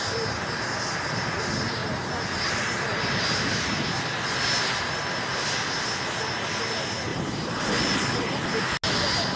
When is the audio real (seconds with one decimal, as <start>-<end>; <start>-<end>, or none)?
0.0-7.1; 7.6-9.4